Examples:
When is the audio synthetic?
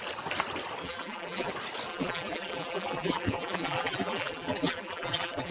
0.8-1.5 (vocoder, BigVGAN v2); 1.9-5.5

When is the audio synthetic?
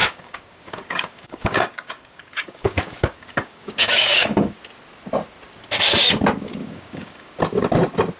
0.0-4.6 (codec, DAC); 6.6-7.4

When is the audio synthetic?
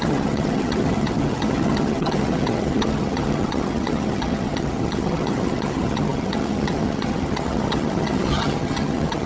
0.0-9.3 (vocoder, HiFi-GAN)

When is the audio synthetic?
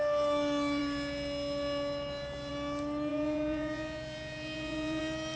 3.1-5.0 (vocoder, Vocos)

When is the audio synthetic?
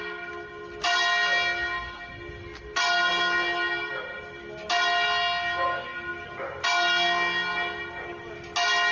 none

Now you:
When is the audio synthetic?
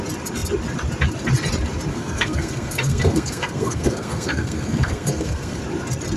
1.9-5.6 (codec, SNAC)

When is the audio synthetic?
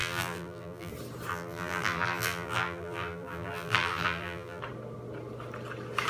0.0-0.9 (vocoder, BigVGAN v2); 1.3-4.6